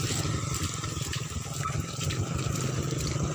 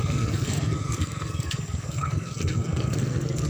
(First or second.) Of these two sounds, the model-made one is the second